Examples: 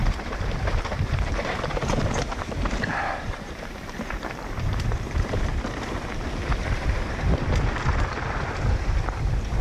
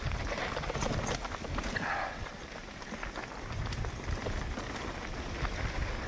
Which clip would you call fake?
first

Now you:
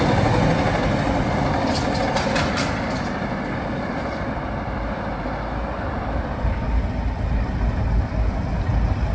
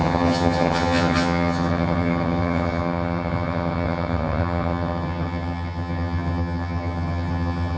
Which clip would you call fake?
second